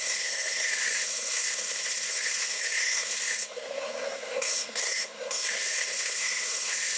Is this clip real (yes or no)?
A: no